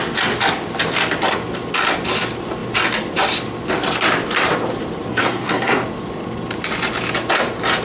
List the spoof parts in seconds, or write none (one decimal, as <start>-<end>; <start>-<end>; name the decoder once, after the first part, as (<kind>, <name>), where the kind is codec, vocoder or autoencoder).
5.1-5.8 (codec, SNAC)